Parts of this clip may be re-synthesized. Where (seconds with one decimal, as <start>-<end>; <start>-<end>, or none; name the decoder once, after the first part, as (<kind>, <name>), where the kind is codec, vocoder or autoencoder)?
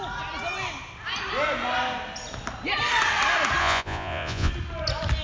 3.6-4.5 (vocoder, Vocos)